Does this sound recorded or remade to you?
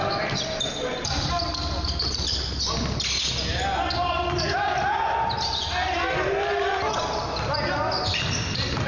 recorded